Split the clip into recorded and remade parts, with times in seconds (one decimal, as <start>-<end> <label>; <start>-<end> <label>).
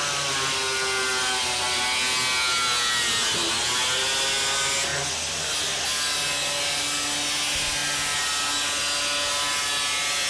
0.0-10.3 recorded